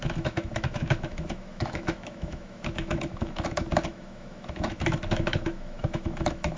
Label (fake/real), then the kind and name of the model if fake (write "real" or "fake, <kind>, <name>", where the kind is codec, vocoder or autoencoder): fake, autoencoder, DAC-VAE